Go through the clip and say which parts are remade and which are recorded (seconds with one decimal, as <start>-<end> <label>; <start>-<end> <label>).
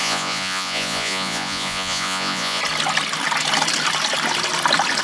0.0-2.6 remade; 2.6-5.0 recorded